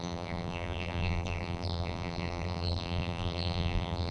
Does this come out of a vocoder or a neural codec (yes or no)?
yes